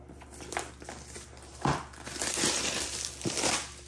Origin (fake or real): real